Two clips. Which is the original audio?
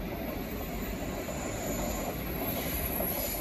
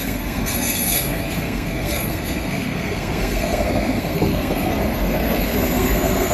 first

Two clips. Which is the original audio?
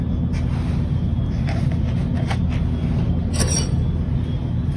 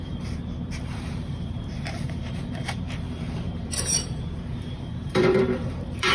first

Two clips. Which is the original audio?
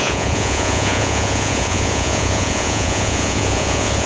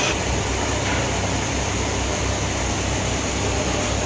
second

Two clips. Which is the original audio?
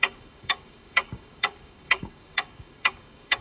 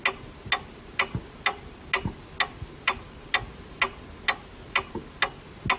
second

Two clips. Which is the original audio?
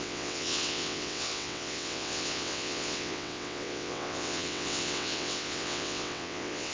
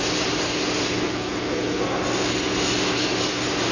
second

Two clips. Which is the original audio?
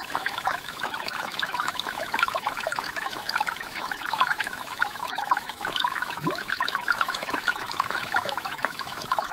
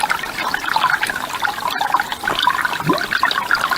second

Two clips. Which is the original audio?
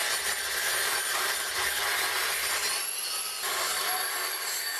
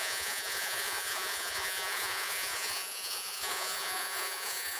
first